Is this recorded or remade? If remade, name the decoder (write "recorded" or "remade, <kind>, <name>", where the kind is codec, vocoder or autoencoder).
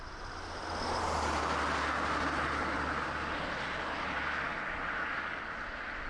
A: recorded